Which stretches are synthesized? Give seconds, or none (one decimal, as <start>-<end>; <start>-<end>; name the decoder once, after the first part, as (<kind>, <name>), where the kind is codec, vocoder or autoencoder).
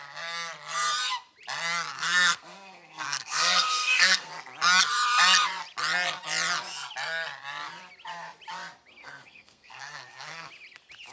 1.9-4.3 (codec, SNAC); 9.0-10.5